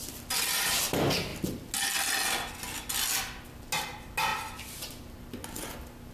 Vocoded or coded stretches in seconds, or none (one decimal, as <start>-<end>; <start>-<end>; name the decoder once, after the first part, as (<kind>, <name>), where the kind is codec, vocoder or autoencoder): none